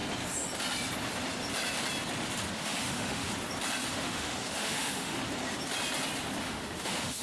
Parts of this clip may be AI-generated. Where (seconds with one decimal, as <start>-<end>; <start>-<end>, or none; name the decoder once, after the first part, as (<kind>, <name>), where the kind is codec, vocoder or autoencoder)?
2.5-3.3 (autoencoder, DAC-VAE); 3.9-5.2; 6.4-7.2